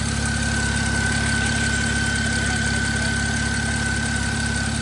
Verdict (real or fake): real